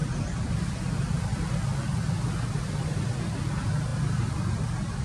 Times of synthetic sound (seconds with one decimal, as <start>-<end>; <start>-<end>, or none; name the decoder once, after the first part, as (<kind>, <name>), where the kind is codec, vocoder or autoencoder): none